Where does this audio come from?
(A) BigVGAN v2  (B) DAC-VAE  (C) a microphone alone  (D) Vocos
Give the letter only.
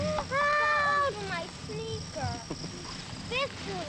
C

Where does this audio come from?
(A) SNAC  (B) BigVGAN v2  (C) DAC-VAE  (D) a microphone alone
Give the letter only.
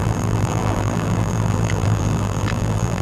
B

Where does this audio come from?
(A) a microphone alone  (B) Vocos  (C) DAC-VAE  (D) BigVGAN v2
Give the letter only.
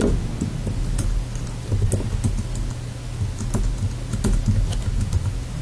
A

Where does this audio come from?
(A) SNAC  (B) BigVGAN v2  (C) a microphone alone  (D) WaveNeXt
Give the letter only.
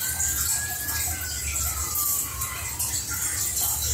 C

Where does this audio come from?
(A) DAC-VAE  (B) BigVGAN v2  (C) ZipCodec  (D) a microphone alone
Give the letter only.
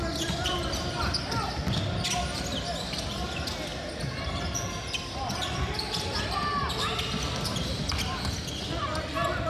D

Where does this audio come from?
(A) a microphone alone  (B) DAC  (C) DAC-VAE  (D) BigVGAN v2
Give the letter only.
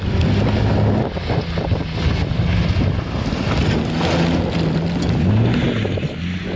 A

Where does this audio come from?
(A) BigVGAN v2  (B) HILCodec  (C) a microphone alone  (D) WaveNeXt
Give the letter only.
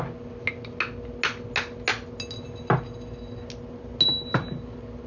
C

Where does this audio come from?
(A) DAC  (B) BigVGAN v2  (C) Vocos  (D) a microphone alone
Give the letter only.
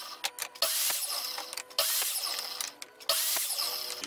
D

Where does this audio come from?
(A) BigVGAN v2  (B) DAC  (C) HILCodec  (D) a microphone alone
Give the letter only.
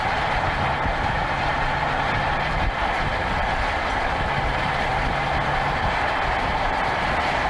A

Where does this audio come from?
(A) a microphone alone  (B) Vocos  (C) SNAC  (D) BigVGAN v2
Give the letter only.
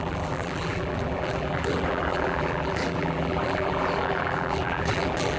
D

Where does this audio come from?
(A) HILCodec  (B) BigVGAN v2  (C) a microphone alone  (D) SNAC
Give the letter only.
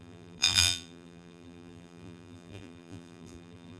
B